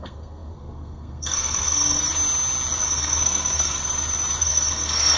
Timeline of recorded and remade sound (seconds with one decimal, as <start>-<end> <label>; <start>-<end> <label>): 0.0-2.0 remade; 2.0-2.8 recorded; 2.8-3.8 remade; 3.8-4.4 recorded; 4.4-5.2 remade